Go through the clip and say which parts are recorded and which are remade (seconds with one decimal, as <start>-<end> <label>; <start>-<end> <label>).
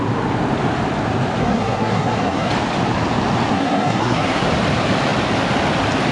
0.0-1.4 recorded; 1.4-2.5 remade; 2.5-3.5 recorded; 3.5-4.5 remade; 4.5-6.1 recorded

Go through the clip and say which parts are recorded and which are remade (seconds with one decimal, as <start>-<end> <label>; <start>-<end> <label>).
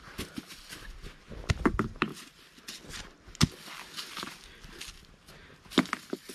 0.0-6.3 recorded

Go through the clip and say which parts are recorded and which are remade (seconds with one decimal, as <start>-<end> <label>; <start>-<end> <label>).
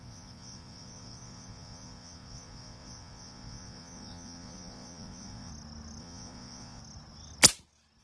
0.0-5.5 remade; 5.5-6.0 recorded; 6.0-6.8 remade; 6.8-8.0 recorded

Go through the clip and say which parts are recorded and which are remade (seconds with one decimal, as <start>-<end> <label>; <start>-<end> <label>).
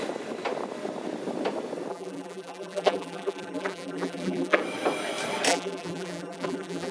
0.0-1.9 recorded; 1.9-4.6 remade; 4.6-5.5 recorded; 5.5-6.9 remade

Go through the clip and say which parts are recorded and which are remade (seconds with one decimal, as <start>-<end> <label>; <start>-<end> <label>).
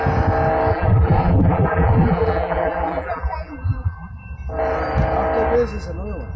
0.0-0.7 recorded; 0.7-4.1 remade; 4.1-6.4 recorded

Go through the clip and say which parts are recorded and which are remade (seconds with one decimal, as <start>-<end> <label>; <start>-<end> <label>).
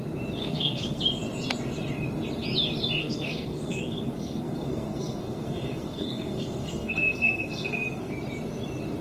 0.0-0.4 recorded; 0.4-1.0 remade; 1.0-3.0 recorded; 3.0-8.1 remade; 8.1-9.0 recorded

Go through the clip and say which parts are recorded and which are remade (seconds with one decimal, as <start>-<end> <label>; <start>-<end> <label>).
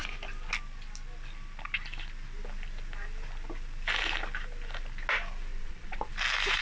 0.0-5.5 recorded; 5.5-6.1 remade; 6.1-6.6 recorded